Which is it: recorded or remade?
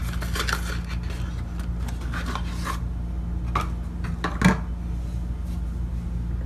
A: recorded